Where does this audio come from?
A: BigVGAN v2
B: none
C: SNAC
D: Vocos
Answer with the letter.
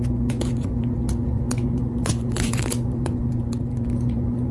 D